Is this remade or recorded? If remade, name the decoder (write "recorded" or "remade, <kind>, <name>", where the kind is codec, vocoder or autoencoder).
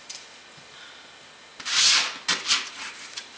recorded